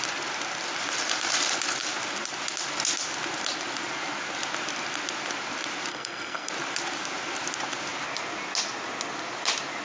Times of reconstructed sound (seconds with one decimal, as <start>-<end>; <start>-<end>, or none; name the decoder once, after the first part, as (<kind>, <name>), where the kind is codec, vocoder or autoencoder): 5.9-6.5 (codec, SNAC)